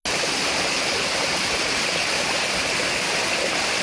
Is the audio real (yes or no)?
yes